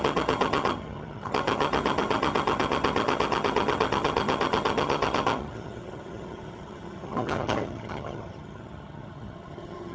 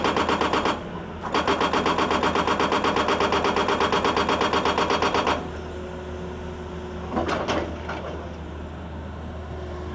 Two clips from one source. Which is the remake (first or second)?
first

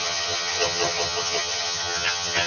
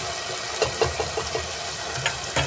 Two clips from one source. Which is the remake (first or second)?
first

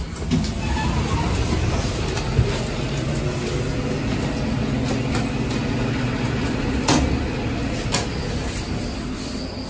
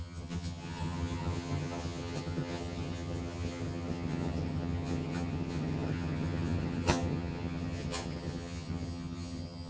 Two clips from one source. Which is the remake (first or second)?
second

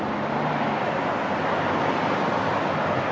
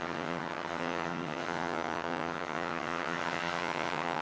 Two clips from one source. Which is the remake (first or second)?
second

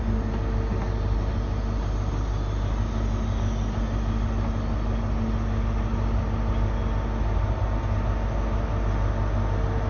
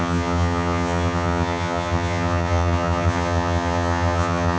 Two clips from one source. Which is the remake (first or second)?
second